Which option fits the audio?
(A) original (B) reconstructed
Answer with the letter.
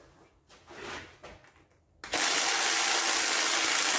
A